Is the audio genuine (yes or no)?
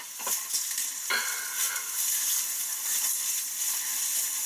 no